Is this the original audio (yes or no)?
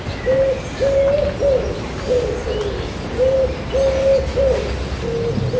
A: yes